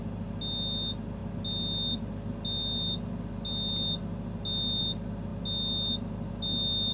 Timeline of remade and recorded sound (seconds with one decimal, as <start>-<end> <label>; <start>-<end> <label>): 0.0-6.9 recorded